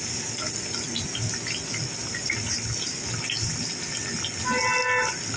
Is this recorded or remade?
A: recorded